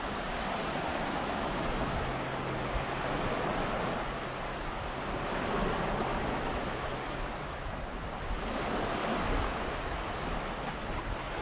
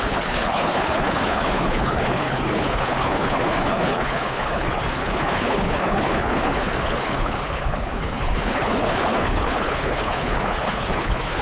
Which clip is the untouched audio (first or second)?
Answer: first